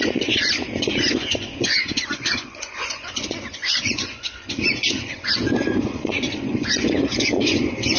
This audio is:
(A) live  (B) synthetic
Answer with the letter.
B